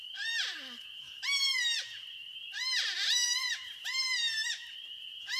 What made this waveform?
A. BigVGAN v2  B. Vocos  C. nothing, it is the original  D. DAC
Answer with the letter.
A